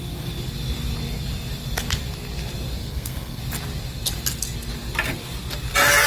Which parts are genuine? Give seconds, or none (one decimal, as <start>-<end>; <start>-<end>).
0.0-2.8; 3.4-6.1